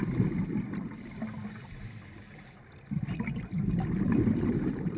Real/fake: real